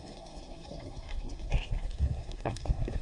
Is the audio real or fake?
fake